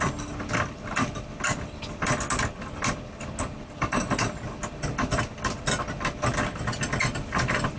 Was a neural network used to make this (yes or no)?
no